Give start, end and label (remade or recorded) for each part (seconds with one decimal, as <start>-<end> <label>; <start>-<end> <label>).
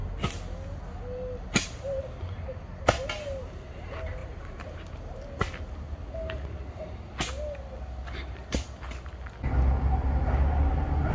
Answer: 0.0-4.2 recorded; 4.2-4.9 remade; 4.9-11.1 recorded